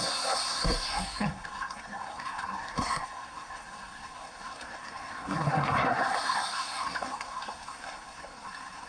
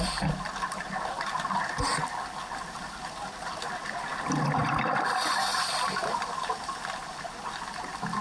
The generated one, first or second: first